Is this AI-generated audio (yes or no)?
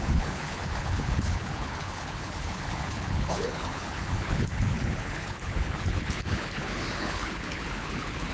yes